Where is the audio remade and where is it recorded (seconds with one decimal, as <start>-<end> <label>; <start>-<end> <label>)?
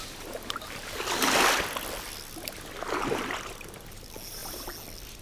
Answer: 0.0-5.2 recorded